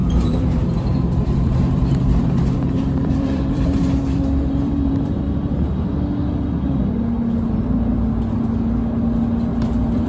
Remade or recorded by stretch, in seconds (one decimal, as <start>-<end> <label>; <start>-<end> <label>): 0.0-5.2 remade; 5.2-9.5 recorded; 9.5-10.1 remade